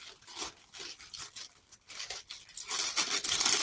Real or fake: real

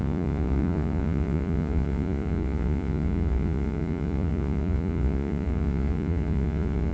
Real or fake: fake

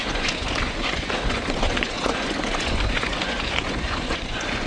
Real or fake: fake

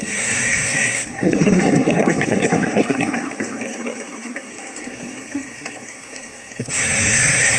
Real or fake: fake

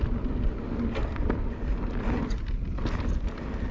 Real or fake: real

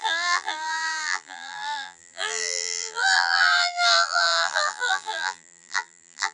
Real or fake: fake